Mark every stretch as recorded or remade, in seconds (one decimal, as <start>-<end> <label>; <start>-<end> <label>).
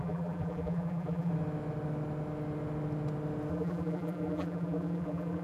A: 0.0-1.3 remade; 1.3-3.5 recorded; 3.5-5.4 remade